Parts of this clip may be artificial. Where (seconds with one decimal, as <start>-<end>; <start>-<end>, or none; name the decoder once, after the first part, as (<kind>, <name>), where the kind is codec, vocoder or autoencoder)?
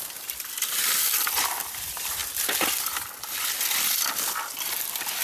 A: none